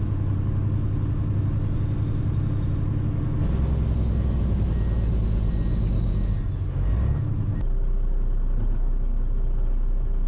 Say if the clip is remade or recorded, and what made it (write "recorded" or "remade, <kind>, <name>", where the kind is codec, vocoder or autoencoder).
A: recorded